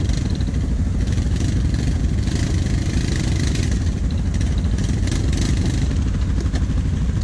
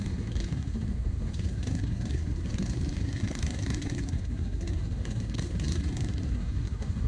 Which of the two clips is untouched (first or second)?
first